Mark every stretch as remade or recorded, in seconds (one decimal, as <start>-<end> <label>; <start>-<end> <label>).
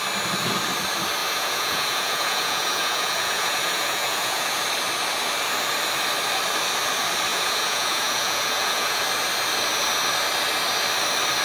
0.0-1.2 recorded; 1.2-4.6 remade; 4.6-7.3 recorded; 7.3-9.0 remade; 9.0-11.4 recorded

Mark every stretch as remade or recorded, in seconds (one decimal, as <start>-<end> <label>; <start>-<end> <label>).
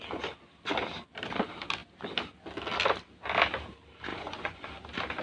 0.0-4.1 recorded; 4.1-4.7 remade; 4.7-5.2 recorded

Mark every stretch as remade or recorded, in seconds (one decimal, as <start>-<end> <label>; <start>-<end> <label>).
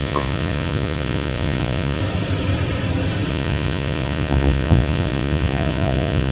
0.0-2.0 remade; 2.0-3.3 recorded; 3.3-6.3 remade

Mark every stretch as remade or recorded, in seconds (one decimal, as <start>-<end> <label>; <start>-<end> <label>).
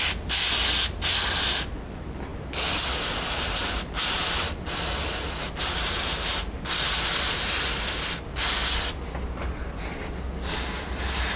0.0-11.4 recorded